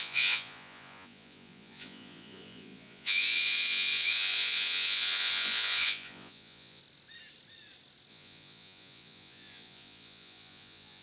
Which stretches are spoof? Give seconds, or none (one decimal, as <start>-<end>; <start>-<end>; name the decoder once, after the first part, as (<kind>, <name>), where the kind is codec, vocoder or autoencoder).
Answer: 0.0-6.8 (vocoder, Vocos); 8.1-11.0